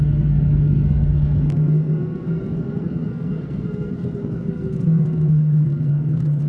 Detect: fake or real fake